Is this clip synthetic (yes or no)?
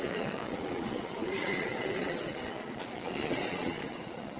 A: yes